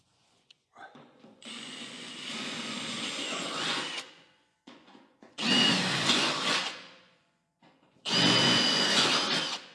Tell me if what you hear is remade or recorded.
remade